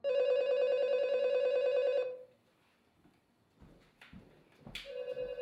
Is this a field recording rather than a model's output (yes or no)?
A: yes